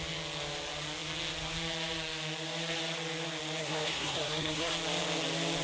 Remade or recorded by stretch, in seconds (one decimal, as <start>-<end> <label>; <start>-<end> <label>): 0.0-3.6 recorded; 3.6-4.7 remade; 4.7-5.6 recorded